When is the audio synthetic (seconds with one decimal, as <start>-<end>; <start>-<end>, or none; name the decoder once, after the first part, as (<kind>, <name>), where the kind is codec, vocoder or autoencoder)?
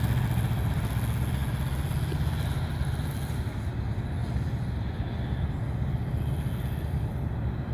none